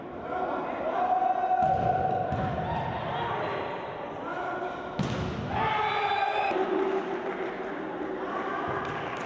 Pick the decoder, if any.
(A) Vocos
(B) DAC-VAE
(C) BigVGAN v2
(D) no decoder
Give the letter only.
D